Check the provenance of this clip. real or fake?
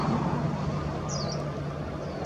real